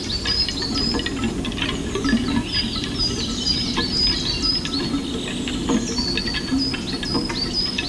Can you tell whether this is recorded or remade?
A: recorded